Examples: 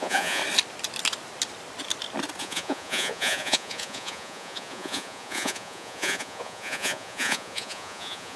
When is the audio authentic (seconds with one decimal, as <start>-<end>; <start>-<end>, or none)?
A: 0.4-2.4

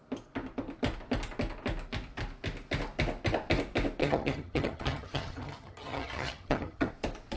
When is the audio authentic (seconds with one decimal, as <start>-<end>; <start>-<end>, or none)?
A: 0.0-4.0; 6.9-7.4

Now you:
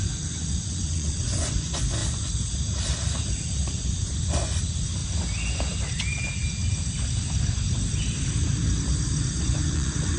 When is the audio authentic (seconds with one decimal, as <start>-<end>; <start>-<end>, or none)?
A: 2.0-3.7; 5.0-9.4